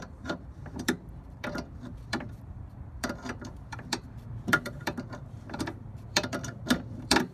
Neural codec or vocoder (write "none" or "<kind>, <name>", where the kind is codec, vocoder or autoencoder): vocoder, BigVGAN v2